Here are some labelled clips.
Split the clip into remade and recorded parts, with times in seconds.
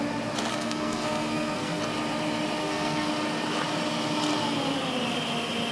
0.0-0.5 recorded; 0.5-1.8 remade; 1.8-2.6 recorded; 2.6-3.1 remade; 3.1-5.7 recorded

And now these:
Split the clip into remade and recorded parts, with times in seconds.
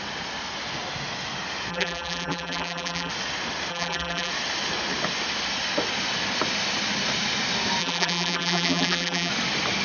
0.0-1.7 recorded; 1.7-3.1 remade; 3.1-3.7 recorded; 3.7-4.3 remade; 4.3-7.8 recorded; 7.8-9.3 remade; 9.3-9.8 recorded